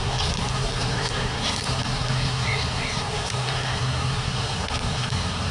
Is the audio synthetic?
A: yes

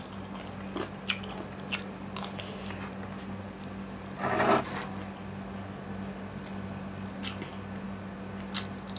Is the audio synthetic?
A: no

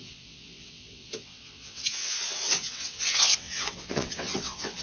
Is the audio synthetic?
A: yes